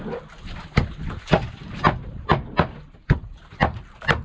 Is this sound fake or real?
real